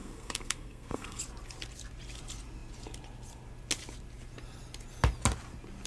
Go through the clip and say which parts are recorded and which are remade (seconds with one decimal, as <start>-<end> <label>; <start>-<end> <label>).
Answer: 0.0-1.2 remade; 1.2-5.9 recorded